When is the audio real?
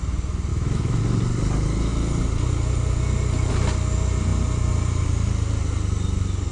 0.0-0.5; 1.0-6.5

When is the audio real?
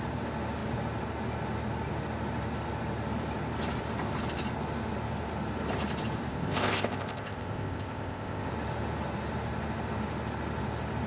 0.0-6.3; 8.5-11.1